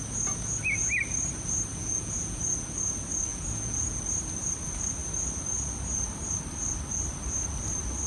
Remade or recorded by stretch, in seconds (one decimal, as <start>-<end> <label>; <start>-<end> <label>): 0.0-1.7 recorded; 1.7-2.4 remade; 2.4-3.3 recorded; 3.3-4.0 remade; 4.0-8.1 recorded